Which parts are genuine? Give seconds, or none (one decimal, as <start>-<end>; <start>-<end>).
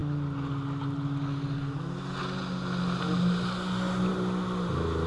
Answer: 0.0-5.1